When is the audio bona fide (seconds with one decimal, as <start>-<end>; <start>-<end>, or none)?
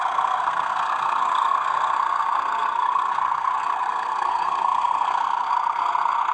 none